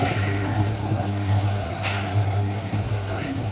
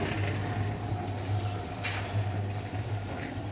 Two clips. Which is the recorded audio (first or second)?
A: second